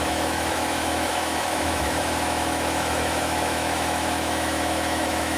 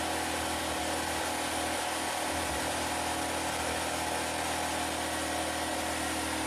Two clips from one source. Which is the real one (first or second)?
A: second